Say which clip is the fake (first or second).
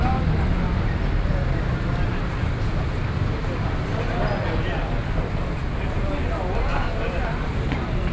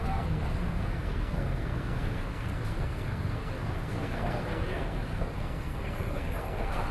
second